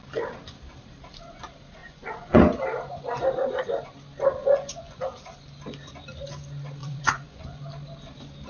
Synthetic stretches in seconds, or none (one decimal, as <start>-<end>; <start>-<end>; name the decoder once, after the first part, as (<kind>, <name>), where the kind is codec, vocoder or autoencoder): 1.8-2.4 (vocoder, Vocos); 4.4-5.0; 6.8-7.6